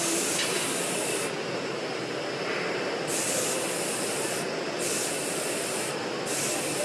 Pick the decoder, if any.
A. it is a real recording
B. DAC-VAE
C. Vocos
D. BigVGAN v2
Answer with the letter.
A